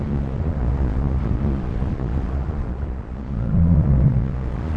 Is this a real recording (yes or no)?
no